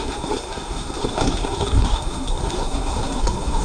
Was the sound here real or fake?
fake